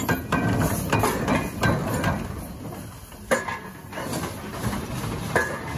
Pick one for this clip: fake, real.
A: real